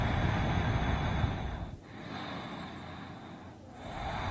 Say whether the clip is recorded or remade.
recorded